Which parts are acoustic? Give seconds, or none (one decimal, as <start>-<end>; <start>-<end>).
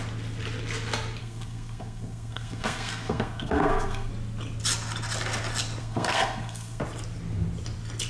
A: 0.0-1.2; 4.1-5.8; 6.8-8.1